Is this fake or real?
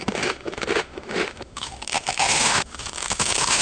fake